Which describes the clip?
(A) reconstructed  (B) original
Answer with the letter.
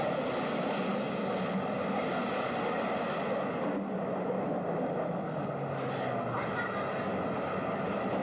B